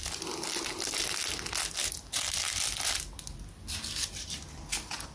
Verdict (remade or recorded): recorded